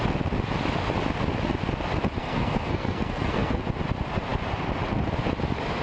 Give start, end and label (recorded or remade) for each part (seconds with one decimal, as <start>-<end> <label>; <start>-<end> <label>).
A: 0.0-2.2 recorded; 2.2-3.6 remade; 3.6-5.8 recorded